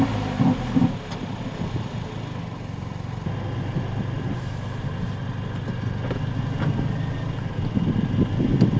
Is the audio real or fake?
real